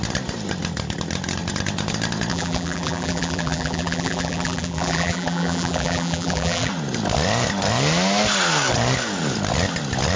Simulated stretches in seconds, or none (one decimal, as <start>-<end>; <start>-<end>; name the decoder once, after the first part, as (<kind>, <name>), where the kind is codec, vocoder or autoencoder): 2.3-6.7 (vocoder, BigVGAN v2)